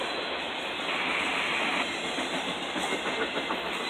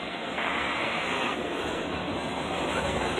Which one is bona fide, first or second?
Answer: first